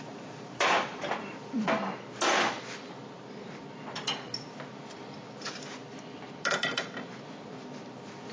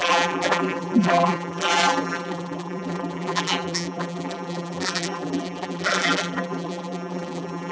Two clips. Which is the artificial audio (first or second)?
second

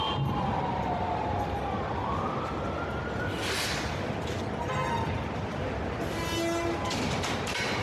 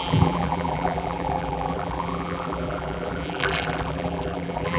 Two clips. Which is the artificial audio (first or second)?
second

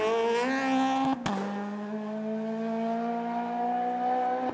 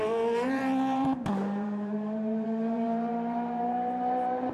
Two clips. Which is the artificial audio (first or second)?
second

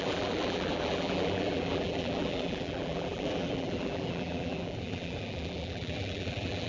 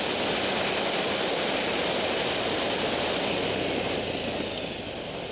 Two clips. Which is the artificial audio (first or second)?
first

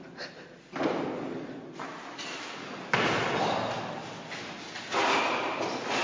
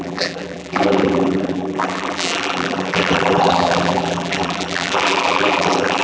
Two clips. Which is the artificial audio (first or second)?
second